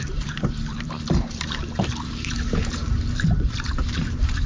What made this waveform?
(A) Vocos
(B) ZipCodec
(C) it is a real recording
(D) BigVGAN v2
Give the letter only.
D